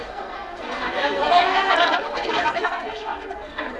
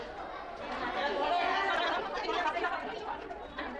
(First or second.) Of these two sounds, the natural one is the second